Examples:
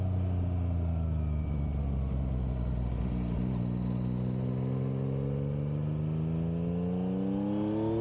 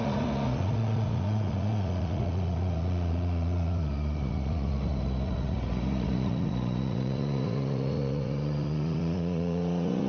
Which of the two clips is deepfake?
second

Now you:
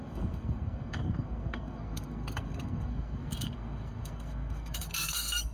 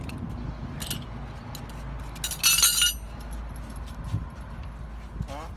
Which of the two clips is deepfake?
first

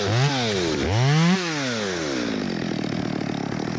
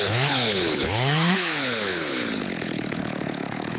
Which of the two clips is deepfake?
second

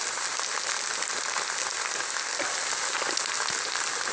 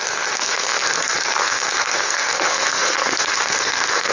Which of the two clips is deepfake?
second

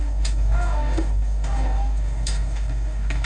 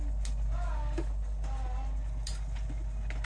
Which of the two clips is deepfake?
first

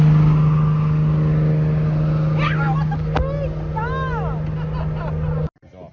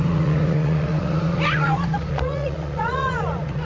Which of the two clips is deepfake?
second